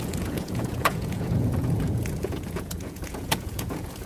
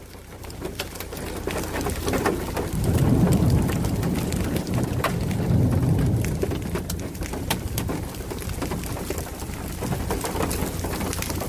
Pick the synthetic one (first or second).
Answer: first